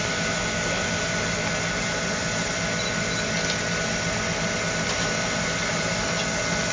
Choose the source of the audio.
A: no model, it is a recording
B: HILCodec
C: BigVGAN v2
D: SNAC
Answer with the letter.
A